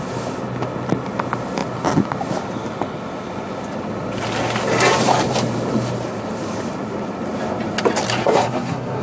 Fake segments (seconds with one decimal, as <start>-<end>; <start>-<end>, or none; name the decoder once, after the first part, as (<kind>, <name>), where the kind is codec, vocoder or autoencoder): 8.2-9.0 (codec, SNAC)